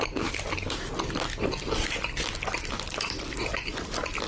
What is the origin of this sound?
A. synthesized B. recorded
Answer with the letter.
B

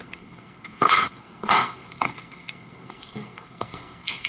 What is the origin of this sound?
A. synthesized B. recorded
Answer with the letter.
A